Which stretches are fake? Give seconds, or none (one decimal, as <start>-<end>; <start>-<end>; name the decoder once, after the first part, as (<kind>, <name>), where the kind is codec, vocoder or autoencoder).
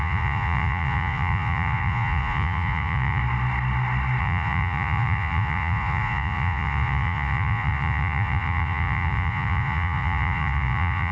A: 0.0-3.2 (vocoder, Vocos); 4.2-11.1